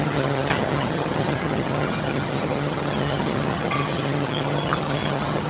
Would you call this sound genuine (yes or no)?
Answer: no